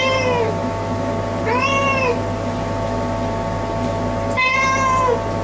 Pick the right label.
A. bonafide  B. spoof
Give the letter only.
A